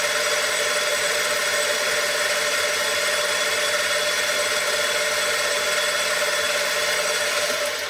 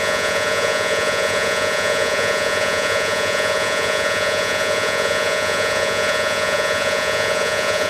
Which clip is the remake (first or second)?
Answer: second